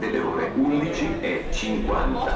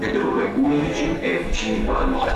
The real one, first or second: first